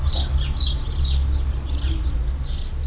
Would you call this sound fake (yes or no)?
no